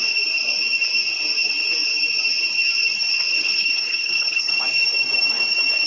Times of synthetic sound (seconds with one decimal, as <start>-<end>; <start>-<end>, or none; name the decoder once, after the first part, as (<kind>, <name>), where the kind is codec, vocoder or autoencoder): 3.4-4.5 (codec, HILCodec)

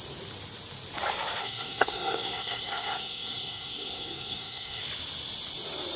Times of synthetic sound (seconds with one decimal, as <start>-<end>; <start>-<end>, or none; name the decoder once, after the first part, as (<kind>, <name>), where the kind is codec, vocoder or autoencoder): 1.4-4.8 (codec, SNAC)

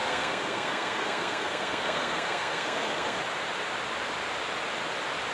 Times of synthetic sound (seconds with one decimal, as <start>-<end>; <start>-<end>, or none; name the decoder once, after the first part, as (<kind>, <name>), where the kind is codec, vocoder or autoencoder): 0.0-3.2 (codec, SNAC)

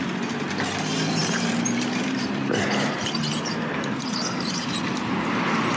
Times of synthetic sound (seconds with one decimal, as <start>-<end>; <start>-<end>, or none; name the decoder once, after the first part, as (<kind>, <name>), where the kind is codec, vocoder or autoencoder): 1.2-4.7 (vocoder, BigVGAN v2)

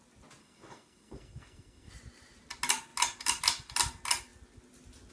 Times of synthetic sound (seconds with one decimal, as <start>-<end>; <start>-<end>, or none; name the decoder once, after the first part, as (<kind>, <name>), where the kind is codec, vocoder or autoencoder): 0.4-1.9 (codec, SNAC)

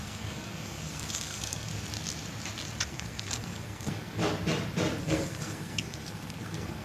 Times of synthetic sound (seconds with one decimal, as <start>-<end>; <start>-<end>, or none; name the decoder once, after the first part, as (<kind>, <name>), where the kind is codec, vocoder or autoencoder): 0.0-1.7 (codec, SNAC); 2.9-4.2; 5.0-6.8

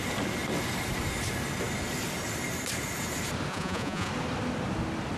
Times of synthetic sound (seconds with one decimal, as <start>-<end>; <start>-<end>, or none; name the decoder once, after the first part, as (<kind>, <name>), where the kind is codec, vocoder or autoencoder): 3.5-4.1 (vocoder, Vocos)

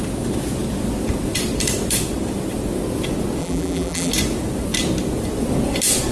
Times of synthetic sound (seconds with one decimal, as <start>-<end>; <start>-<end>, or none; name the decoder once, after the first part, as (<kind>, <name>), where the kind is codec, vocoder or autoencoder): 3.4-4.1 (vocoder, BigVGAN v2)